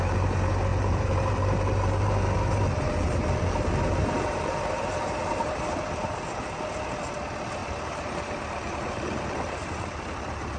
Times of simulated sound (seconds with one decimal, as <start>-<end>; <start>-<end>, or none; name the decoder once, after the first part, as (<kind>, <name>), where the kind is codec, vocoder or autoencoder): 0.7-5.8 (vocoder, BigVGAN v2); 7.6-10.6

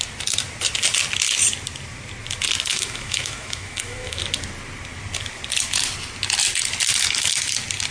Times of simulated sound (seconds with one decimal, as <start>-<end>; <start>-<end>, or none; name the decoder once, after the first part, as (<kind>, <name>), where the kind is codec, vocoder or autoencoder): 2.7-4.2 (autoencoder, DAC-VAE)